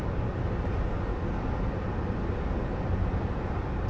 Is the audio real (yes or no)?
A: yes